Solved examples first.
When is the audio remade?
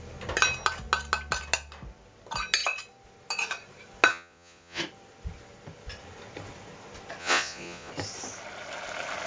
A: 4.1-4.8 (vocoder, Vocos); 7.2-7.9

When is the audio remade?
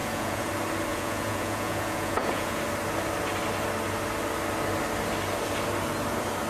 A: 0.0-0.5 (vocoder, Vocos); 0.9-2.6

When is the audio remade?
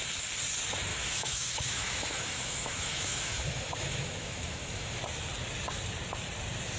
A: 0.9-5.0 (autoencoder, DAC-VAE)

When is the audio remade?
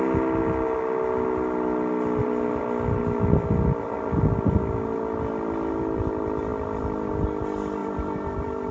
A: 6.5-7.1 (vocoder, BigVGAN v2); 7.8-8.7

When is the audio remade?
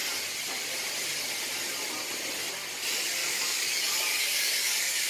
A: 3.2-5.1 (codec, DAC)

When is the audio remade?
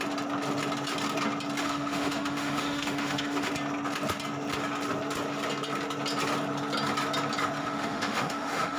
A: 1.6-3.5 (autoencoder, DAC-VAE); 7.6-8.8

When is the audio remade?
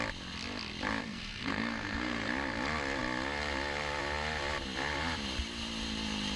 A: 1.0-2.3 (codec, SNAC)